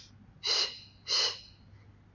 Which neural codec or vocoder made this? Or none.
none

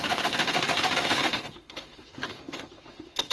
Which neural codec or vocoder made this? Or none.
autoencoder, DAC-VAE